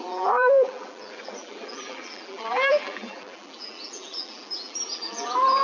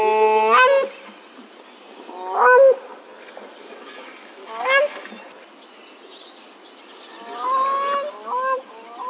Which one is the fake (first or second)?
first